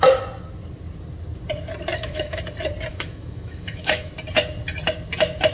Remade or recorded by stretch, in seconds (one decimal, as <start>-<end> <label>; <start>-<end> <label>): 0.0-1.9 recorded; 1.9-2.4 remade; 2.4-2.9 recorded; 2.9-4.1 remade; 4.1-5.5 recorded